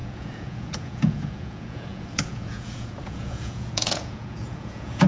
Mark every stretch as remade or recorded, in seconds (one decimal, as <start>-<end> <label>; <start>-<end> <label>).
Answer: 0.0-5.1 remade